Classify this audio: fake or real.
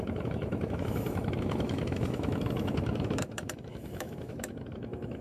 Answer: fake